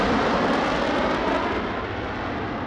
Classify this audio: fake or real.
real